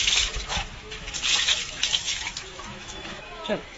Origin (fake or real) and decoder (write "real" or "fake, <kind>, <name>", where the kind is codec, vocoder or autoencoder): fake, autoencoder, DAC-VAE